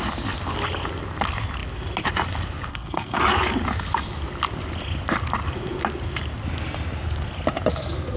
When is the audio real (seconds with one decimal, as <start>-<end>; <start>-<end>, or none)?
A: 0.0-2.7; 3.2-8.2